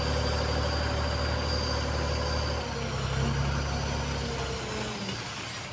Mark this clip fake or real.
real